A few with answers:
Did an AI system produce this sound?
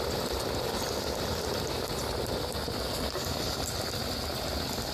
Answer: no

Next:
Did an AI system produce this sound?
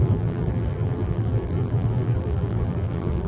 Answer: yes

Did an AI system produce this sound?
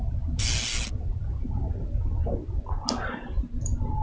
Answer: no